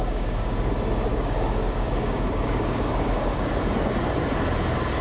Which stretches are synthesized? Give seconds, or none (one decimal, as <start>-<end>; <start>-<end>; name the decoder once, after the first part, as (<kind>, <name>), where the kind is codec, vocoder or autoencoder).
0.0-0.7 (codec, DAC); 1.1-3.5